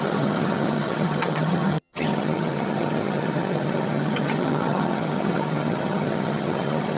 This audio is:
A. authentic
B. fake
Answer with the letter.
B